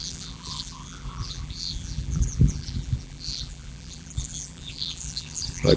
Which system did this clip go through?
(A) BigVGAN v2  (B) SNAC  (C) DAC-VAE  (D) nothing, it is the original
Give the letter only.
A